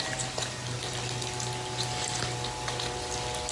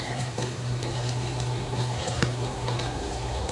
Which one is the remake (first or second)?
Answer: second